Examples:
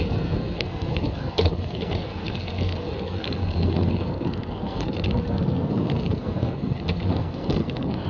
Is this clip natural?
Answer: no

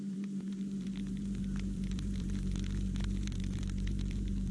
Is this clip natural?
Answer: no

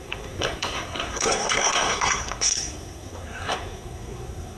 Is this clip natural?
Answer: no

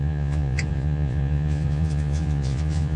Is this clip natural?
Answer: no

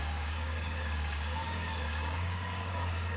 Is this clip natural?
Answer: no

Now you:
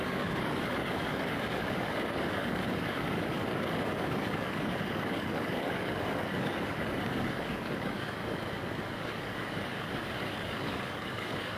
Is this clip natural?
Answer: no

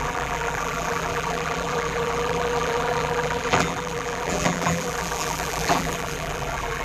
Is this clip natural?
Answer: no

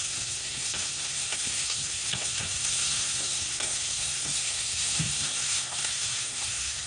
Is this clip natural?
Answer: no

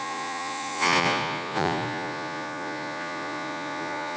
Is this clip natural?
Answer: no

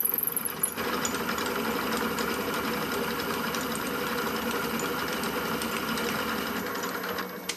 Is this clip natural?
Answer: yes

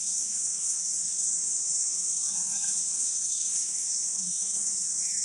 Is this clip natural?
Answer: no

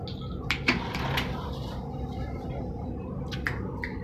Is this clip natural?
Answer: yes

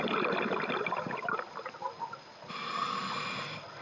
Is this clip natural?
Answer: yes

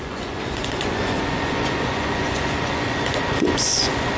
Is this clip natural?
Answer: no